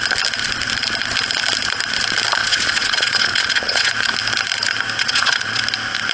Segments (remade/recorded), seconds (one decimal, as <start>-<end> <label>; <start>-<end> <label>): 0.0-2.4 recorded; 2.4-3.9 remade; 3.9-5.0 recorded; 5.0-5.6 remade; 5.6-6.1 recorded